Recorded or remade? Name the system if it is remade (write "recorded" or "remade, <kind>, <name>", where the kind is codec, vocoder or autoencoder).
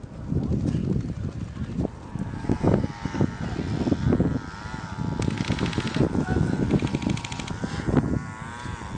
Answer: recorded